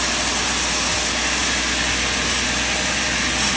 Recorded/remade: recorded